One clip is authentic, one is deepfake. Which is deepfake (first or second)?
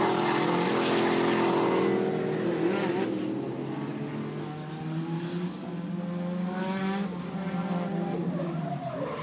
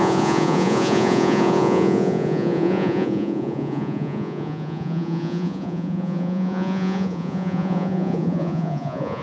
second